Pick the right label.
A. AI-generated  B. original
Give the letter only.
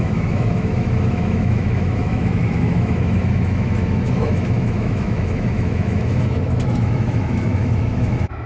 A